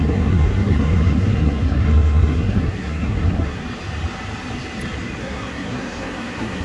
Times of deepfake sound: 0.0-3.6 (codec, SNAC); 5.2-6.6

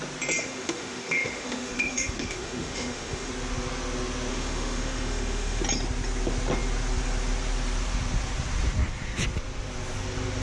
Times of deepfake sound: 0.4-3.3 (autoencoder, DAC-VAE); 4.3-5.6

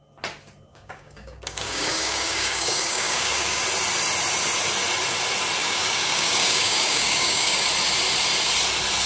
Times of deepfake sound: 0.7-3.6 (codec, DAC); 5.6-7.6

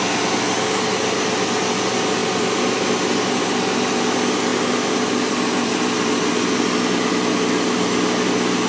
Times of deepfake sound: 2.2-3.4 (vocoder, BigVGAN v2); 4.5-7.1

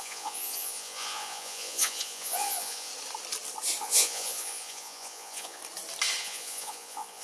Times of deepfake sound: 0.0-2.9 (vocoder, Vocos); 3.8-5.6; 6.2-7.2

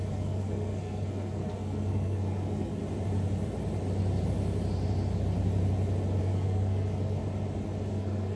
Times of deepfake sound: 0.0-2.8 (codec, SNAC); 6.2-7.2; 7.9-8.4

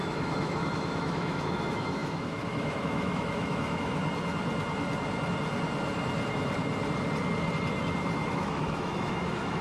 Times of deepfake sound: 0.0-4.0 (autoencoder, DAC-VAE); 8.3-9.6